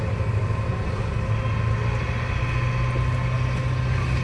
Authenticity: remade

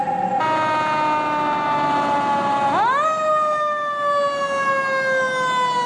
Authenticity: recorded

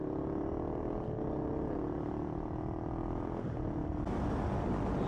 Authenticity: recorded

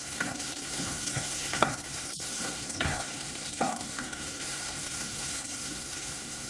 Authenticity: remade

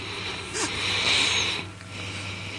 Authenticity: recorded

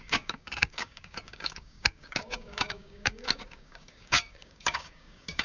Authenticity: remade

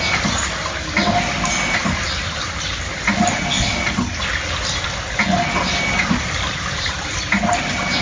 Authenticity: recorded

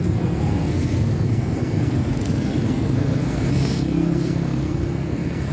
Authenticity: remade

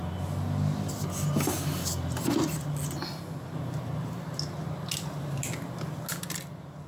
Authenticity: recorded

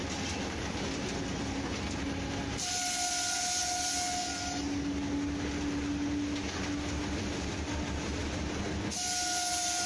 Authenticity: recorded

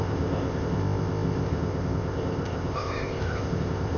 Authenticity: remade